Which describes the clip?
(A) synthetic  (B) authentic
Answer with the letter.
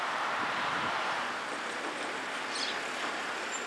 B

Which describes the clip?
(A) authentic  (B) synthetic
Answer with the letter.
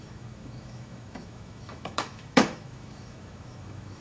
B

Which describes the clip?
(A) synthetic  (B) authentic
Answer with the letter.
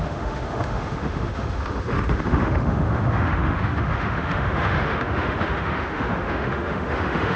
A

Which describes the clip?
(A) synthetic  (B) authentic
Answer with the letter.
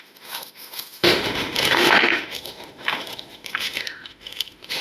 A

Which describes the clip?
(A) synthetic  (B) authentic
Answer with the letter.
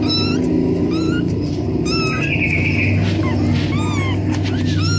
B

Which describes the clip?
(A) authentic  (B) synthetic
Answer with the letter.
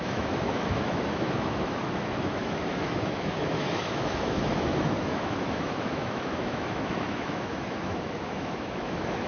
B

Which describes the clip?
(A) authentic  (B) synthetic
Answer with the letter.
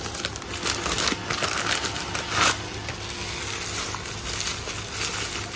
A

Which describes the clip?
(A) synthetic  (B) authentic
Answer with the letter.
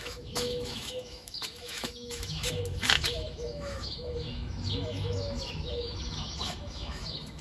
A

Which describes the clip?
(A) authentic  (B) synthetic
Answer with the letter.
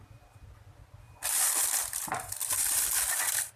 A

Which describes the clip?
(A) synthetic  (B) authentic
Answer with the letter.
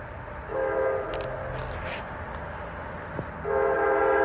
B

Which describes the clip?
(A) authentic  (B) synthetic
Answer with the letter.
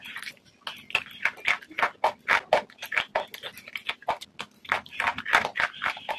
A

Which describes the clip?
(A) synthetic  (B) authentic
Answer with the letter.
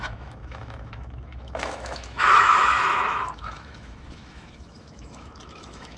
A